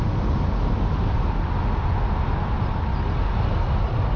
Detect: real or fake real